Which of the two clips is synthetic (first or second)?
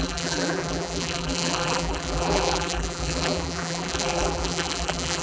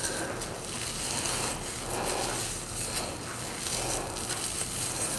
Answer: first